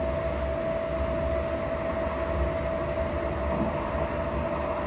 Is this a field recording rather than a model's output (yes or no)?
yes